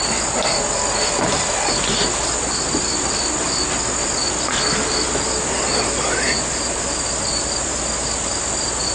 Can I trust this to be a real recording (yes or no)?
yes